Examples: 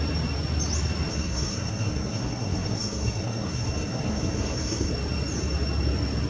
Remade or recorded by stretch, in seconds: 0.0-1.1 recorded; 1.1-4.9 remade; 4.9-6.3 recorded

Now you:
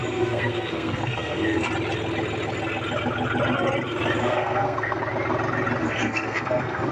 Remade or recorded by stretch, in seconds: 0.0-1.7 remade; 1.7-4.2 recorded; 4.2-5.0 remade; 5.0-5.8 recorded; 5.8-6.9 remade

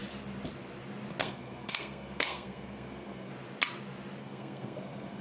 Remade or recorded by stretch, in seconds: 0.0-1.2 recorded; 1.2-3.3 remade; 3.3-4.2 recorded; 4.2-5.2 remade